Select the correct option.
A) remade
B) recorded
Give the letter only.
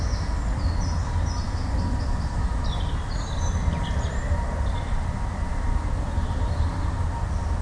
B